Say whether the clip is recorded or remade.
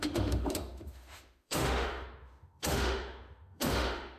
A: remade